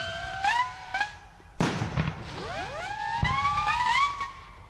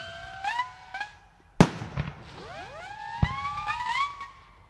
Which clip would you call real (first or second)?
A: second